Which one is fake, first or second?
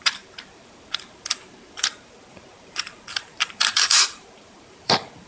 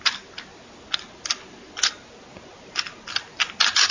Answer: first